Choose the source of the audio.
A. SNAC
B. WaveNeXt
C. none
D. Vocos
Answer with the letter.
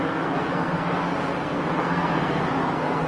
A